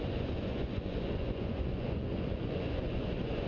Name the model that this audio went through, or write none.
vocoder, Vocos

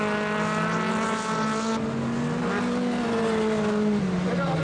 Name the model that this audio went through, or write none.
none